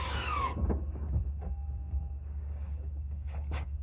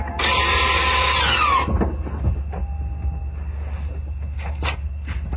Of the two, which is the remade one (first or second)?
first